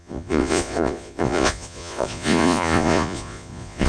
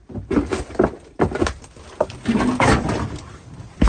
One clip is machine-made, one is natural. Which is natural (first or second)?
second